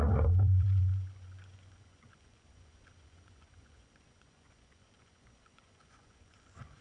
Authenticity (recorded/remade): remade